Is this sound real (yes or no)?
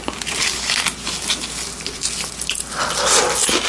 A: yes